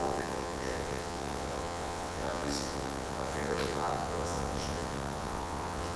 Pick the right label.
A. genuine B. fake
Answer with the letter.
B